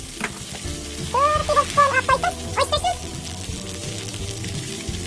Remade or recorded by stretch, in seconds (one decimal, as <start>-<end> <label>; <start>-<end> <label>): 0.0-1.4 recorded; 1.4-2.5 remade; 2.5-2.9 recorded; 2.9-4.6 remade; 4.6-5.1 recorded